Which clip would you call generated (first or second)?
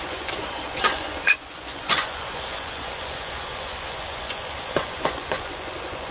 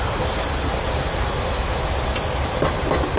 first